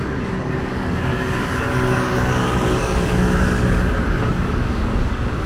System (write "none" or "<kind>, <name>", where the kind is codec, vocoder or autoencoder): codec, DAC